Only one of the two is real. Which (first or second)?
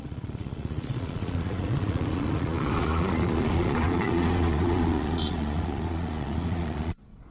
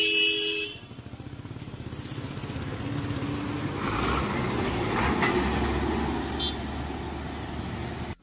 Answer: second